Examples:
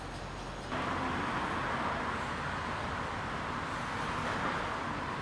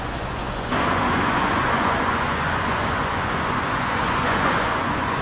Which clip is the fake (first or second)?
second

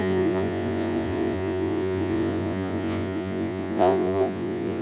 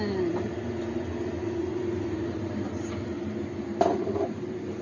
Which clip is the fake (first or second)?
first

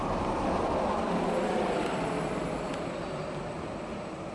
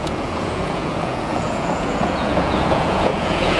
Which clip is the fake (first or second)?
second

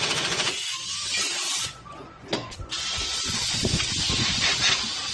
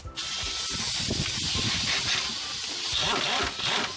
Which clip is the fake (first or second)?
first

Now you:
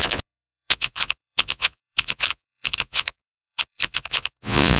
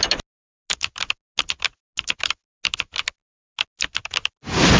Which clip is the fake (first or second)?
first